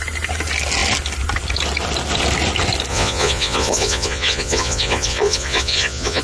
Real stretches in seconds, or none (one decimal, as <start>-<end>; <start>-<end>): 0.0-2.9